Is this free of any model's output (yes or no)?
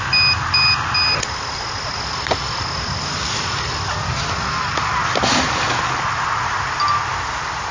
yes